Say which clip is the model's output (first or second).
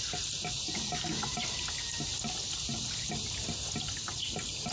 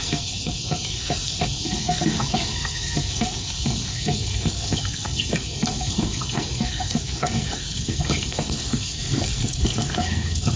second